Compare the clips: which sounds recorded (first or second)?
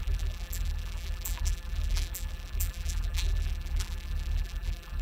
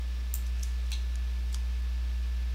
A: second